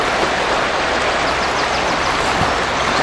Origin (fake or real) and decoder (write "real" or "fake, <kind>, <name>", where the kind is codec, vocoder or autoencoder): real